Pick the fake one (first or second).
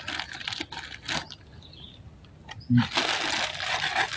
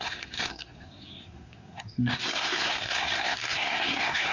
second